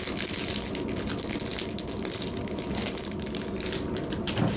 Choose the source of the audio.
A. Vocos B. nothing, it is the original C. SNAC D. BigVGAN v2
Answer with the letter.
B